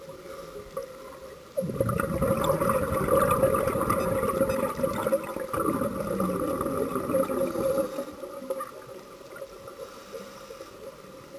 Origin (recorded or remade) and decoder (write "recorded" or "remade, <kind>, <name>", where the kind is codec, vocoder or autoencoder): recorded